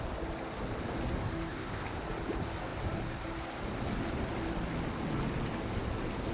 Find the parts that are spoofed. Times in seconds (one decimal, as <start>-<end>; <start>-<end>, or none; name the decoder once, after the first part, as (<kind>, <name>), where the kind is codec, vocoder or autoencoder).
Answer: 1.5-2.0 (codec, ZipCodec)